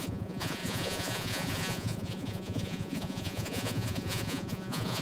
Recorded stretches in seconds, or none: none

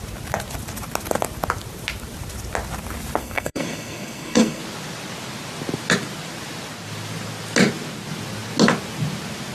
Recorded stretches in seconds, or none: 0.0-3.2; 4.6-9.5